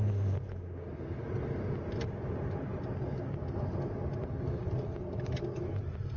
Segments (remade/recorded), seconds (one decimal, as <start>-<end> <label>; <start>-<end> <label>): 0.0-6.2 recorded